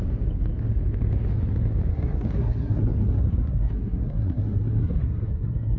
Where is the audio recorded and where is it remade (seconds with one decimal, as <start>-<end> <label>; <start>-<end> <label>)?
0.0-1.9 recorded; 1.9-5.8 remade